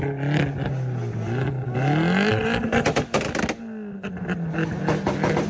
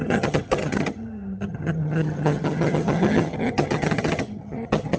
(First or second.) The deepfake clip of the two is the second